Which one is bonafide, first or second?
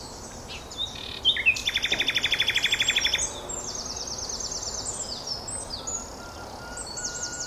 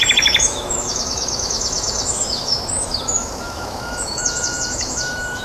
first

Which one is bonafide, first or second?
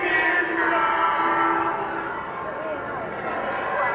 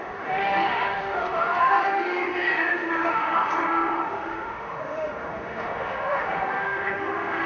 first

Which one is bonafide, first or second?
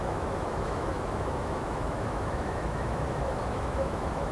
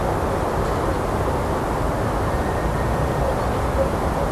second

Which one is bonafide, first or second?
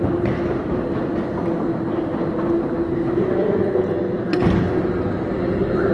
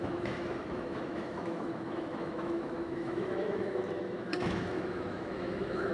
first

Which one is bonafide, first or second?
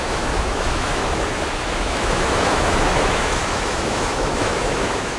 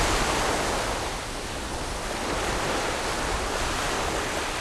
second